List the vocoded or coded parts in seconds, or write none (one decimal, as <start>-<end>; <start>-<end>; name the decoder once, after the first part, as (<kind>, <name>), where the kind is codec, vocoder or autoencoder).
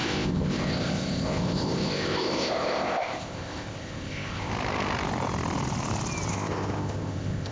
0.0-4.5 (codec, ZipCodec); 6.3-7.5